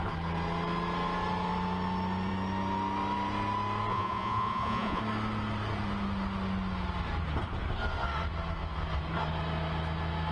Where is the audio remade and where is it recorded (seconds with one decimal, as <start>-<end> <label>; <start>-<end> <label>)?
0.0-3.9 recorded; 3.9-5.0 remade; 5.0-10.3 recorded